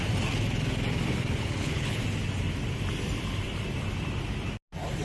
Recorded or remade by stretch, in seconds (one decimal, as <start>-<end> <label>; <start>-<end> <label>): 0.0-1.4 recorded; 1.4-2.0 remade; 2.0-5.0 recorded